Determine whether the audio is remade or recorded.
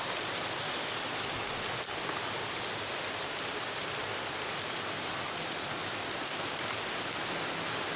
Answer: remade